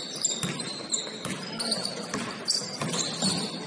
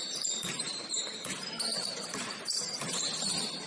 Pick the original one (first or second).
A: first